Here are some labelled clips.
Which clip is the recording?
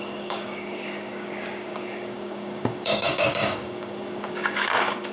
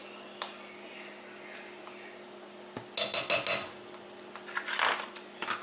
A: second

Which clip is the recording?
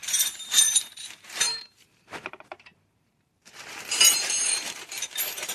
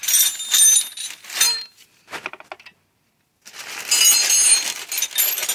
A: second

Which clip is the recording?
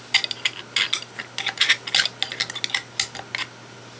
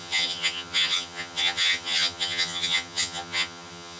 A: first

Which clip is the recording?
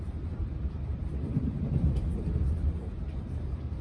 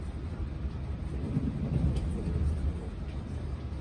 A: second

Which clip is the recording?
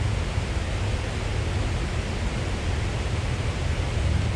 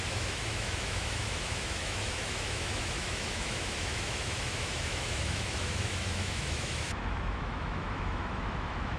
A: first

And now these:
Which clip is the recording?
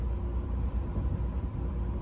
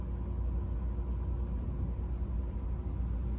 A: second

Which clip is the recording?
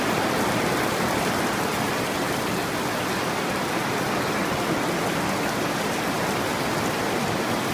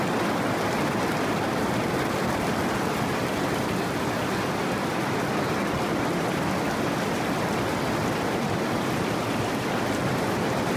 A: first